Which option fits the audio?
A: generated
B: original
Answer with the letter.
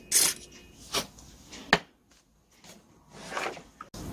B